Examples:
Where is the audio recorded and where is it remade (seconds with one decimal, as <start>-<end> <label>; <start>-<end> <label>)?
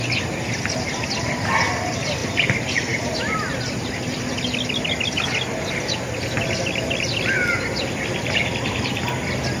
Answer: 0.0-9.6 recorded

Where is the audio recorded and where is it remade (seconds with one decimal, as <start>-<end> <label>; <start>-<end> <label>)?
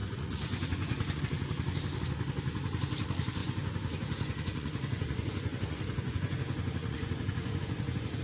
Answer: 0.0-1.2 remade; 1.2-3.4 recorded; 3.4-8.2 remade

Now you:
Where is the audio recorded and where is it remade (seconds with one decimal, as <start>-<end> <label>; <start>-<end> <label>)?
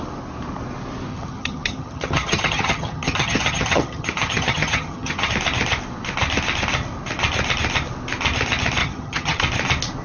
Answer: 0.0-1.1 recorded; 1.1-5.3 remade; 5.3-8.8 recorded; 8.8-9.4 remade; 9.4-10.0 recorded